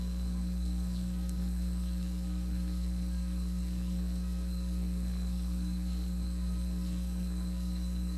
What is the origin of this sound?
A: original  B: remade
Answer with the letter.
B